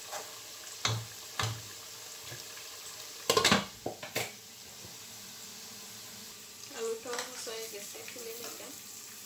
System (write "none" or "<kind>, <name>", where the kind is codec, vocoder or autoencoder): none